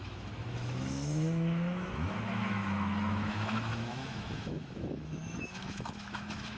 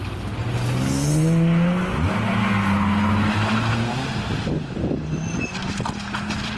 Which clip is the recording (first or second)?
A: second